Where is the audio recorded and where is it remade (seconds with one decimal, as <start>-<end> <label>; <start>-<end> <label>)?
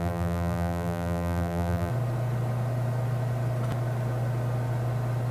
0.0-1.9 remade; 1.9-5.3 recorded